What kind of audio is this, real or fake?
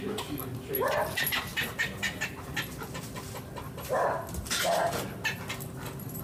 real